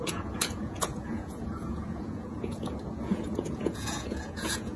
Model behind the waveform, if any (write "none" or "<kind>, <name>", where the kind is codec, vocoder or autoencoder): vocoder, Vocos